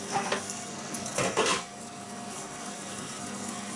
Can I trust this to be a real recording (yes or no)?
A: no